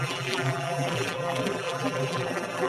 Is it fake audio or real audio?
fake